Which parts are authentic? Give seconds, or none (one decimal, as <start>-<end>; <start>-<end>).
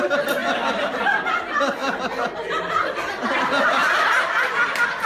0.0-1.8; 2.6-3.8; 4.5-5.1